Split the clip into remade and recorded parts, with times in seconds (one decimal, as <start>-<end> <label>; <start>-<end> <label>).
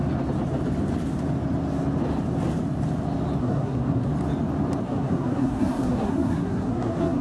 0.0-3.4 recorded; 3.4-4.1 remade; 4.1-4.8 recorded; 4.8-7.2 remade